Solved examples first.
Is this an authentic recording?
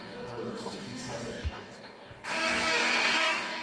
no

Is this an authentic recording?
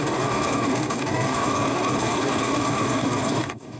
no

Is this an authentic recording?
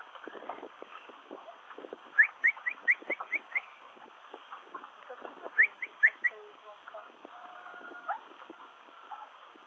no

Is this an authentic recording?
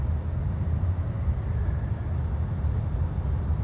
yes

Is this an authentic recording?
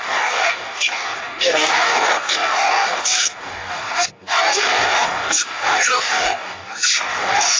no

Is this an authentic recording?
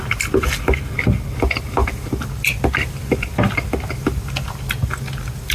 yes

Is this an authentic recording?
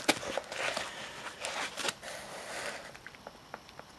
yes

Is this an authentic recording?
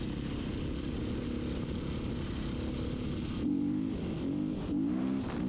yes